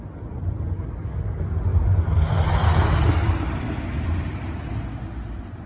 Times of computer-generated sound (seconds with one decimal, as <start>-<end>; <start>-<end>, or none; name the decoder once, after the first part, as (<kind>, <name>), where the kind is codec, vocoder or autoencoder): none